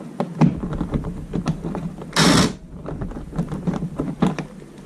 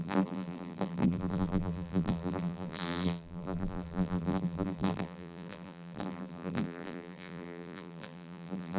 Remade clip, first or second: second